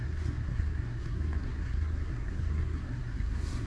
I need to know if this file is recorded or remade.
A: remade